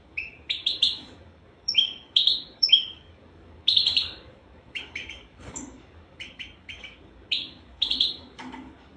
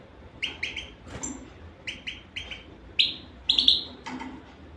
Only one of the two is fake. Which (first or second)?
first